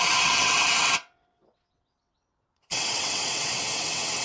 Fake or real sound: fake